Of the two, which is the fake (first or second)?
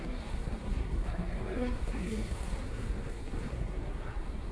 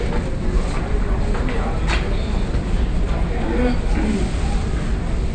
first